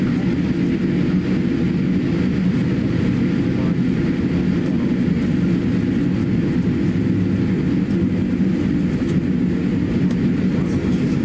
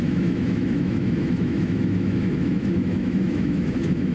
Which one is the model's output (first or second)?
second